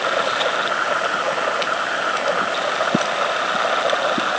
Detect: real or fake real